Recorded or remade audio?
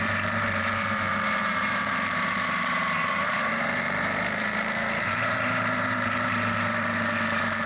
remade